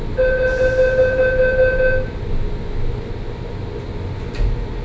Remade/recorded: recorded